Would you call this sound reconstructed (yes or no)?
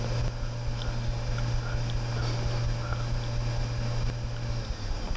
no